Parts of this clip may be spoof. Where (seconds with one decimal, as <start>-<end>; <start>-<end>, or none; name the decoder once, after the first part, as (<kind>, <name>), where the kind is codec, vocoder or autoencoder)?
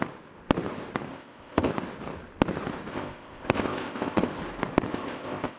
1.1-1.7 (codec, ZipCodec); 2.9-4.3; 4.9-5.6